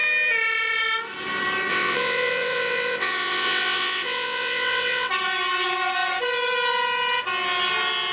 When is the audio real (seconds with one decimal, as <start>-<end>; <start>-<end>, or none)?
0.0-1.7; 5.1-8.1